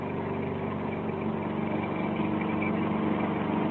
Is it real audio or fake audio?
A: real